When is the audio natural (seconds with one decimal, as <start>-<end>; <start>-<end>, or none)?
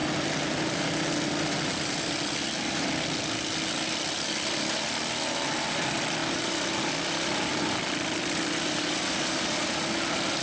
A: 0.0-10.4